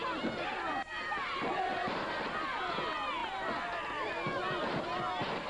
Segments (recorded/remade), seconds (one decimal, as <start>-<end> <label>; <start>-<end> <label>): 0.0-5.5 recorded